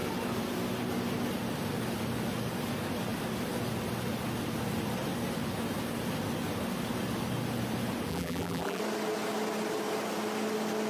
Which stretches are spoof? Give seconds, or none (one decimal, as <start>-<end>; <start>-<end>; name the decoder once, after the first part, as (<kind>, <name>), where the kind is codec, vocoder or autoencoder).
8.1-8.8 (vocoder, BigVGAN v2)